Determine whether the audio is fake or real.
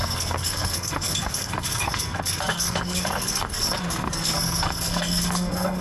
fake